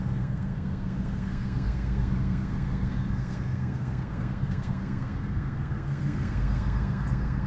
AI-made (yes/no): yes